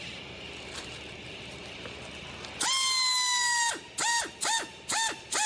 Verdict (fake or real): real